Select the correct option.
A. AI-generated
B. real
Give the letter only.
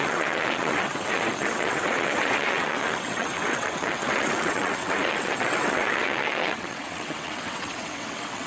A